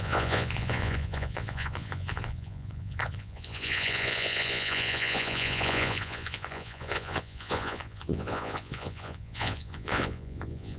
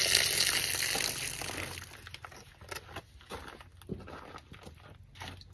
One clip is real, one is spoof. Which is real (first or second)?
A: second